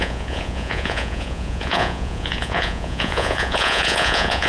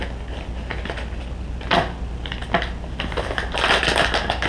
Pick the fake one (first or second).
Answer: first